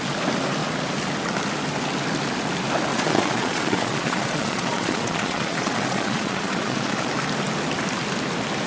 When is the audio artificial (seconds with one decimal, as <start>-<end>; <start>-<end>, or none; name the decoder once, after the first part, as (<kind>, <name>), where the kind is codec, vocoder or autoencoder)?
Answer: 2.9-7.1 (vocoder, Vocos)